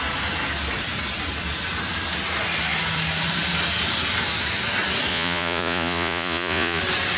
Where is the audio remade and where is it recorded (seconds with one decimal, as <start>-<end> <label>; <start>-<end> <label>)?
0.0-5.1 recorded; 5.1-6.8 remade; 6.8-7.2 recorded

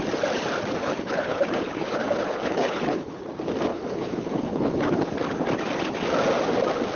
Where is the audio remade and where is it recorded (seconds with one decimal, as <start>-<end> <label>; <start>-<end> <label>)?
0.0-0.8 recorded; 0.8-3.2 remade; 3.2-3.7 recorded; 3.7-5.1 remade; 5.1-7.0 recorded

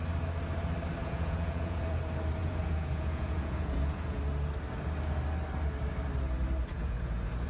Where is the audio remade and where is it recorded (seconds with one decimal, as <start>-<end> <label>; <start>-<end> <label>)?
0.0-1.0 recorded; 1.0-2.0 remade; 2.0-2.4 recorded; 2.4-4.2 remade; 4.2-6.7 recorded; 6.7-7.5 remade

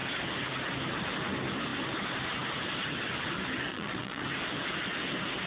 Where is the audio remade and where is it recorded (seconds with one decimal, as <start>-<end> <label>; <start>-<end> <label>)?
0.0-3.7 recorded; 3.7-4.3 remade; 4.3-5.5 recorded